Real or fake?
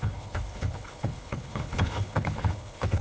fake